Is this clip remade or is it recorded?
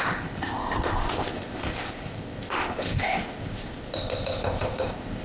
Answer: remade